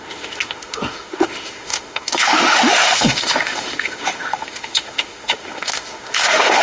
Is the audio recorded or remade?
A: remade